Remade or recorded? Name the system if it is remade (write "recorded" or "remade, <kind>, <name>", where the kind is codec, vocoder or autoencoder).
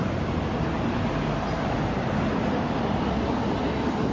recorded